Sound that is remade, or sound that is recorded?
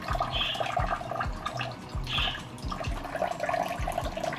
recorded